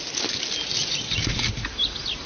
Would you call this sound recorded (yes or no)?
yes